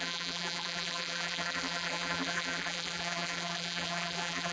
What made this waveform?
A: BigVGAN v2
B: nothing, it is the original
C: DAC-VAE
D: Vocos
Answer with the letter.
A